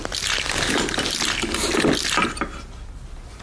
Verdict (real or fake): real